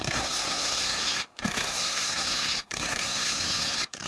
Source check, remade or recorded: remade